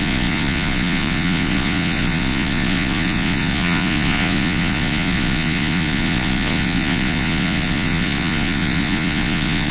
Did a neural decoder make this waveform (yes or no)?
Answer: yes